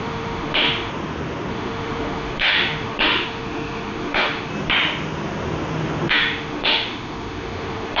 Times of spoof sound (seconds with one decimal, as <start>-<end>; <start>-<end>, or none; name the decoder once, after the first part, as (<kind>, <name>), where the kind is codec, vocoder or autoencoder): 0.0-0.9 (autoencoder, DAC-VAE); 1.5-4.5; 6.1-8.0

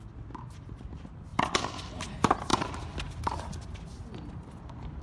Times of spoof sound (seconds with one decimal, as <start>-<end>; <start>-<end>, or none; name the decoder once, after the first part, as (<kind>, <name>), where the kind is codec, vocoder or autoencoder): none

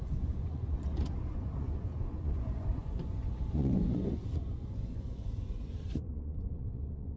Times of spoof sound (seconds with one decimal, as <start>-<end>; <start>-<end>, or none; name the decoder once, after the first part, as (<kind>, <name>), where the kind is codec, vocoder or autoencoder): 0.0-7.2 (vocoder, Vocos)

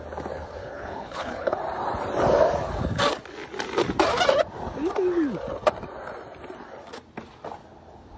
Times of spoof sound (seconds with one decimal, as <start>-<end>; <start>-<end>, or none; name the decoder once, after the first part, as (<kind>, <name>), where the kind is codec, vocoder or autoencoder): 0.6-1.6 (codec, HILCodec)

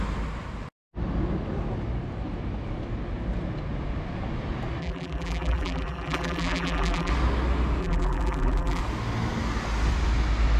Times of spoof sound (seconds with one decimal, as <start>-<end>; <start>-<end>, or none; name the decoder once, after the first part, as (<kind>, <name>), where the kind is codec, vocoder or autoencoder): 4.8-7.1 (vocoder, BigVGAN v2); 7.8-8.8

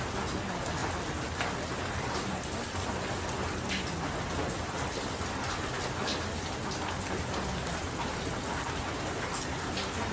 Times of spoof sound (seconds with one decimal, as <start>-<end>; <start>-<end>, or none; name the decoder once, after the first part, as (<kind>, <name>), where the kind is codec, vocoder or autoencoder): none

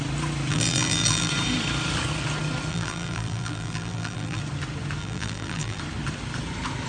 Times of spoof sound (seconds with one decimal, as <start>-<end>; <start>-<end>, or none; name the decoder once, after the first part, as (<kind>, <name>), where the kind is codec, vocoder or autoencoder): 0.5-1.3 (vocoder, BigVGAN v2); 2.7-4.4; 5.0-5.8

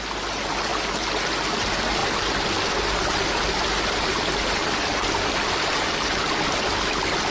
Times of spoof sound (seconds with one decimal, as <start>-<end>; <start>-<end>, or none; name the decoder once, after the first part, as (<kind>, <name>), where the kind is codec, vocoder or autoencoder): none